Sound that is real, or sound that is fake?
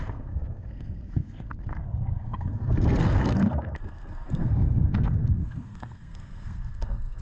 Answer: fake